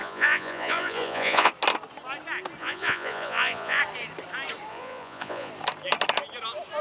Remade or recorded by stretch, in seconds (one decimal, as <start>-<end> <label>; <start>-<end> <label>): 0.0-1.5 remade; 1.5-2.6 recorded; 2.6-3.8 remade; 3.8-4.7 recorded; 4.7-5.5 remade; 5.5-6.8 recorded